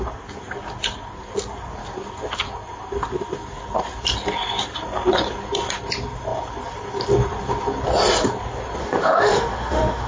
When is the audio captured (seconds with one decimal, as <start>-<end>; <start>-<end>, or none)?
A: 0.0-8.8